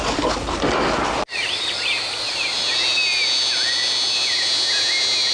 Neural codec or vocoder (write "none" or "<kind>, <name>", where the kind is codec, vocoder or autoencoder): none